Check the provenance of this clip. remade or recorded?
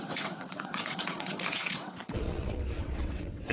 remade